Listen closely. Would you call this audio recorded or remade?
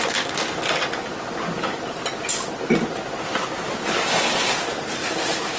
recorded